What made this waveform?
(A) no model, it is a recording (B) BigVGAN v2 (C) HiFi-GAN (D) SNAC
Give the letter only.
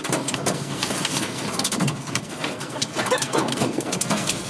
D